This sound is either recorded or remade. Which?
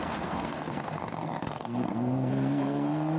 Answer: remade